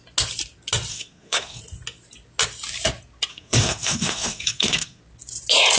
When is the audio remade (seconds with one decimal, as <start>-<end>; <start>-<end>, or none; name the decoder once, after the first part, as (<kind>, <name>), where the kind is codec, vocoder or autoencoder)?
0.9-1.6 (codec, SNAC); 3.3-5.0